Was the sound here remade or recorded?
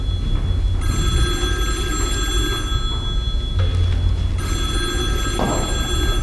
recorded